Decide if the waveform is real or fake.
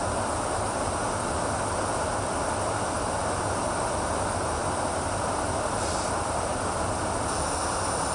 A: real